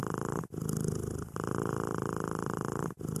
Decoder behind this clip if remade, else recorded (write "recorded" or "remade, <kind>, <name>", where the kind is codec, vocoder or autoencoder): recorded